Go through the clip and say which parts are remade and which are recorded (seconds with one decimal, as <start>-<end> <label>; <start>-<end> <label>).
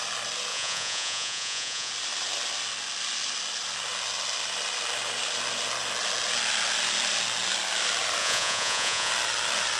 0.0-0.5 recorded; 0.5-1.9 remade; 1.9-8.2 recorded; 8.2-9.1 remade; 9.1-9.8 recorded